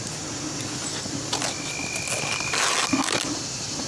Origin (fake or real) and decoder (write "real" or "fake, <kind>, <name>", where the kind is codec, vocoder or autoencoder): real